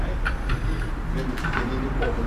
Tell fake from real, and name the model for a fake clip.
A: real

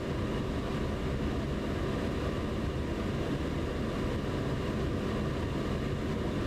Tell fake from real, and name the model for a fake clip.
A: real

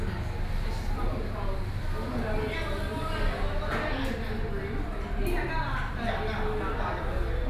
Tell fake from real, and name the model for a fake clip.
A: real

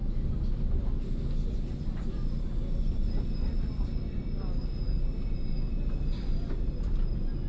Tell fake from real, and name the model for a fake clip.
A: real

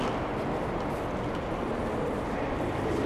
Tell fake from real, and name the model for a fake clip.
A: real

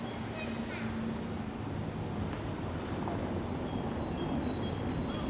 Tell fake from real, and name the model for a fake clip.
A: real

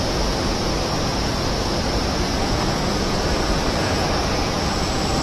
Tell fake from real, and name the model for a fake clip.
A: fake, vocoder, Vocos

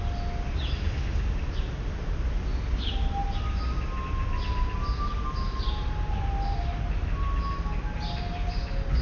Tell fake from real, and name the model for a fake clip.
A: real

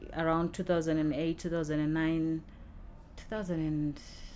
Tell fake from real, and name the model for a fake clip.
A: real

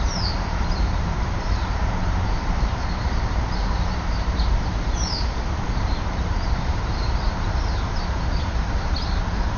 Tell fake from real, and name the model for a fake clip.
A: fake, vocoder, BigVGAN v2